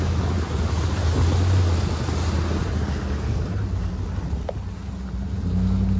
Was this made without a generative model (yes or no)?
yes